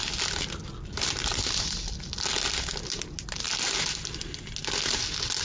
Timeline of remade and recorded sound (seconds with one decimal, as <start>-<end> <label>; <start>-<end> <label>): 0.0-5.4 recorded

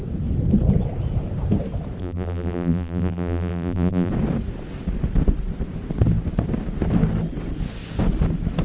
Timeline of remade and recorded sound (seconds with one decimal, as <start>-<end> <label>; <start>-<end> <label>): 0.0-2.0 recorded; 2.0-4.1 remade; 4.1-8.6 recorded

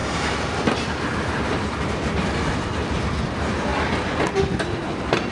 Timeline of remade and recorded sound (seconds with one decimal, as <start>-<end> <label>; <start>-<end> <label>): 0.0-1.7 remade; 1.7-5.3 recorded

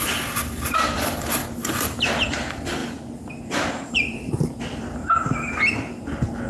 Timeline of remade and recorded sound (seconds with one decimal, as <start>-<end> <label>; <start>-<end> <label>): 0.0-1.4 remade; 1.4-2.2 recorded; 2.2-2.8 remade; 2.8-3.9 recorded; 3.9-5.0 remade; 5.0-6.5 recorded

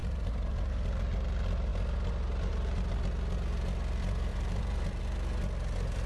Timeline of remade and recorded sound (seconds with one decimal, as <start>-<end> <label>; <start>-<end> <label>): 0.0-0.7 remade; 0.7-4.3 recorded; 4.3-5.0 remade; 5.0-6.1 recorded

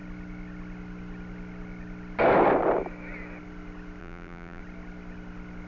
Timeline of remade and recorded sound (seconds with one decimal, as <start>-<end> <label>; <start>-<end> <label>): 0.0-4.0 recorded; 4.0-4.6 remade; 4.6-5.7 recorded

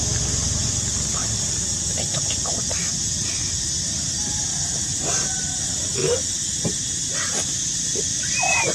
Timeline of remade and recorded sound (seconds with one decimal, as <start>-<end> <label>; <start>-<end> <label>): 0.0-8.7 recorded